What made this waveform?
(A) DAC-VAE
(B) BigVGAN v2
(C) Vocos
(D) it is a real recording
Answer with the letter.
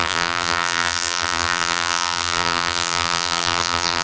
B